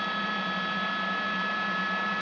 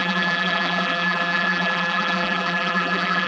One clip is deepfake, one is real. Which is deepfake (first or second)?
second